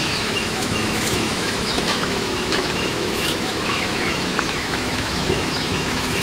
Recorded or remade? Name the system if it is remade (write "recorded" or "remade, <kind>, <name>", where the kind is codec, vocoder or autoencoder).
remade, autoencoder, DAC-VAE